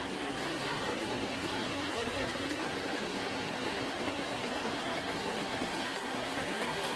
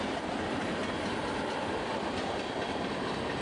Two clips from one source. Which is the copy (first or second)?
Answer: first